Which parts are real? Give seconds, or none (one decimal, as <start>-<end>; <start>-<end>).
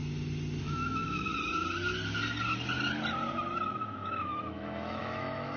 0.0-0.6; 1.3-3.7